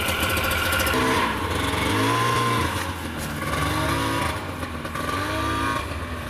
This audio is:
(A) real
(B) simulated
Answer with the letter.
A